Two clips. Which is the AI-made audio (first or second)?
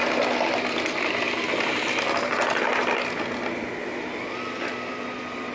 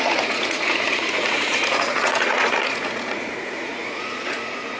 second